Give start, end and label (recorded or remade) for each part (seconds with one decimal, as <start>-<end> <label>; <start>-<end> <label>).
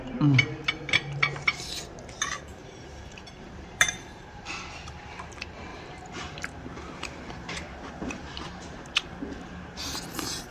0.0-2.5 recorded; 2.5-4.5 remade; 4.5-5.7 recorded; 5.7-10.5 remade